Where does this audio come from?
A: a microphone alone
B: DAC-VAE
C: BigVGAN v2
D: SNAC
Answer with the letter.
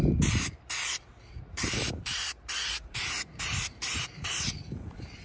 C